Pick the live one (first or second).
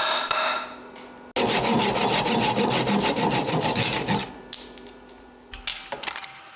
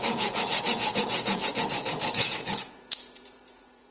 first